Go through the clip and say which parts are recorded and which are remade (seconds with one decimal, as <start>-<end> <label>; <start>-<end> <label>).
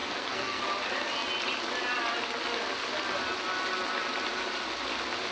0.0-0.6 remade; 0.6-5.3 recorded